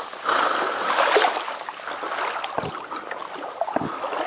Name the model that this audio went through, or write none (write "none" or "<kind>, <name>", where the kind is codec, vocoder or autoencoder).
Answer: none